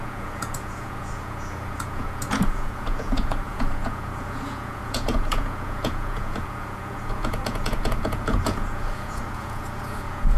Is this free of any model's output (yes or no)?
no